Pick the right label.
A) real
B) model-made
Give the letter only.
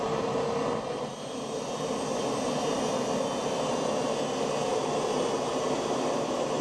A